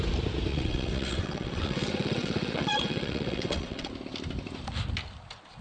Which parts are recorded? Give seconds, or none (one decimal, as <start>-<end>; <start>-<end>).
0.0-0.5; 3.9-5.6